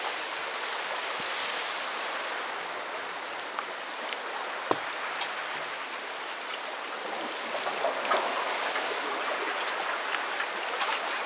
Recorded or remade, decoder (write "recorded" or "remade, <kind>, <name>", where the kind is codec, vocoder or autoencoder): recorded